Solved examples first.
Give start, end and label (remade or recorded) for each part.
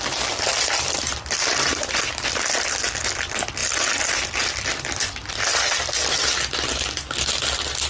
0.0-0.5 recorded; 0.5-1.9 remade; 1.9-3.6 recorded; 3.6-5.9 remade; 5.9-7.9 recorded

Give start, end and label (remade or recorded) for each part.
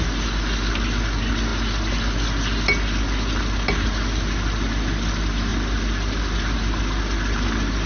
0.0-7.9 recorded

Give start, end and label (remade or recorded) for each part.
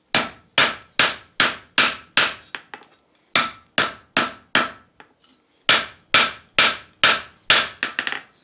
0.0-8.4 recorded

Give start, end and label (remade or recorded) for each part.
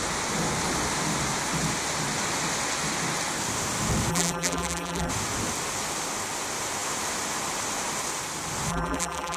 0.0-4.1 recorded; 4.1-5.1 remade; 5.1-8.7 recorded; 8.7-9.4 remade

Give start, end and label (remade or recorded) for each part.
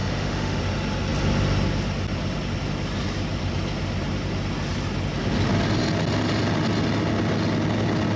0.0-0.6 remade; 0.6-8.2 recorded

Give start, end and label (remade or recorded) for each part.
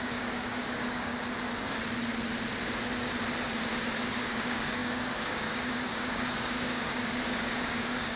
0.0-1.1 remade; 1.1-4.1 recorded; 4.1-8.2 remade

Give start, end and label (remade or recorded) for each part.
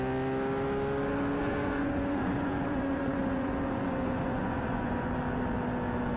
0.0-1.4 recorded; 1.4-5.1 remade; 5.1-6.2 recorded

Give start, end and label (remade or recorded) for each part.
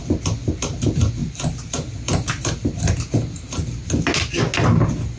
0.0-5.2 recorded